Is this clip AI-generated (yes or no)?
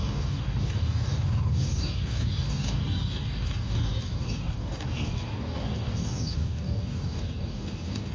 yes